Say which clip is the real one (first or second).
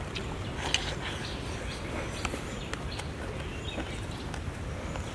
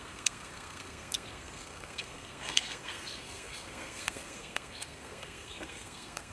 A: first